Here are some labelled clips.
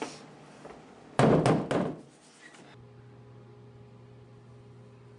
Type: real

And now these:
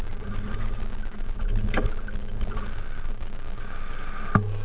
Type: real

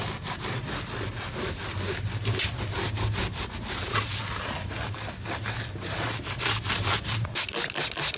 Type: real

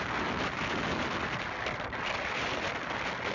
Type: real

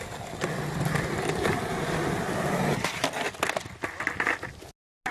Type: real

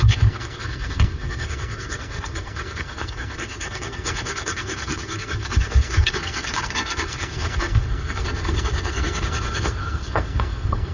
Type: fake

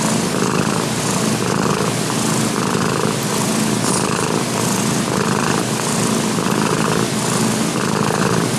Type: real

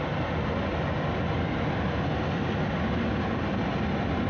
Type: real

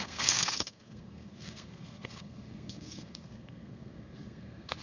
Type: fake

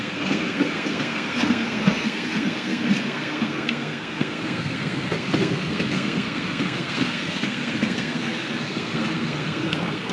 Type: fake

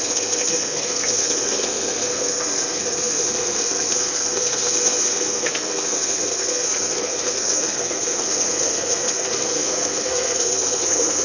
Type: fake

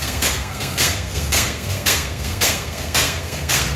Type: fake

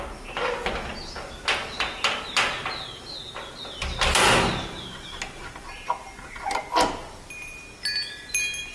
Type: real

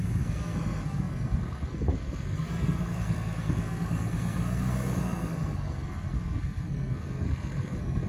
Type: fake